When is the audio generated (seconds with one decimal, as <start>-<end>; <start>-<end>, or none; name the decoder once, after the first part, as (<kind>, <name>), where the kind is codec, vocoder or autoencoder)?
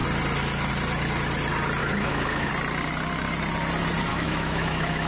1.8-2.5 (autoencoder, DAC-VAE); 4.1-5.1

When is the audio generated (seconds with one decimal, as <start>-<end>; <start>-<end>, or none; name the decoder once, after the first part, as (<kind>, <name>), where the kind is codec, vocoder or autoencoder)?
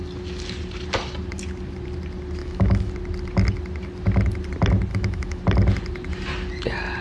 2.4-2.9 (autoencoder, DAC-VAE); 4.9-5.4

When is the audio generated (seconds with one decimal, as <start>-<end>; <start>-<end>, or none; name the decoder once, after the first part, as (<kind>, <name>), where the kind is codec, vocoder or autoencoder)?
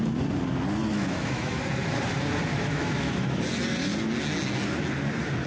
0.9-1.6 (autoencoder, DAC-VAE); 2.5-3.4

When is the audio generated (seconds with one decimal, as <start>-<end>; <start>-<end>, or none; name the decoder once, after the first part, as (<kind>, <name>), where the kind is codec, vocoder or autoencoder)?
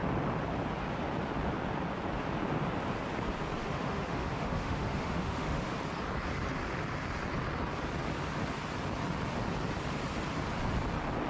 3.6-5.8 (autoencoder, DAC-VAE)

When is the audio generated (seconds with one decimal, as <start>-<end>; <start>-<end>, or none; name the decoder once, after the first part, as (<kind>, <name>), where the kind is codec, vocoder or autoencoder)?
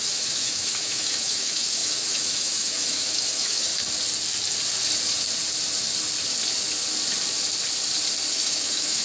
0.0-3.7 (autoencoder, DAC-VAE); 8.3-9.0